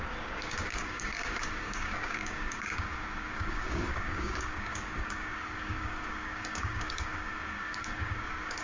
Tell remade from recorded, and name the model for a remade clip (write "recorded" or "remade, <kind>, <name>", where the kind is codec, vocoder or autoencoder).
remade, codec, DAC